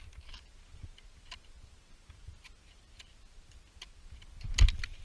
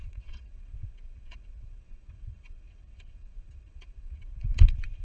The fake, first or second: second